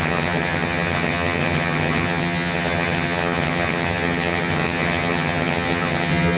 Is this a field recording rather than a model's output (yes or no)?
no